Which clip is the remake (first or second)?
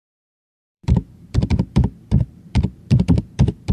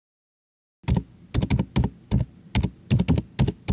first